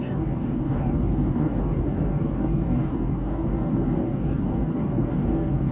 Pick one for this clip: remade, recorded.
remade